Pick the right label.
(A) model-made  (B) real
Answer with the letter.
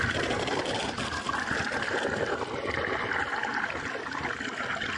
B